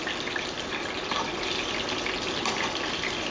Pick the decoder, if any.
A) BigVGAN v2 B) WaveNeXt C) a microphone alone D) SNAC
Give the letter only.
C